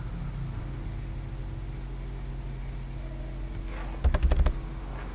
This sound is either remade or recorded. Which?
recorded